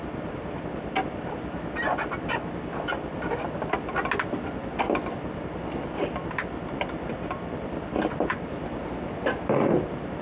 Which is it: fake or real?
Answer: real